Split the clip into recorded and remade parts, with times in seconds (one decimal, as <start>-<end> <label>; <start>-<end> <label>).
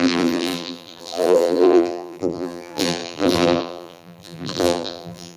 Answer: 0.0-5.4 remade